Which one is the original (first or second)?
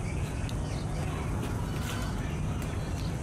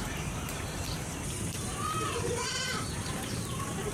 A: first